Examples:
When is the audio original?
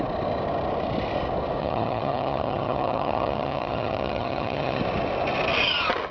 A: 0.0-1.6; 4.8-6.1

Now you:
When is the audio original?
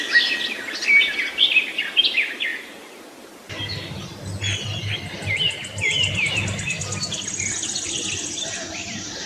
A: 0.0-9.3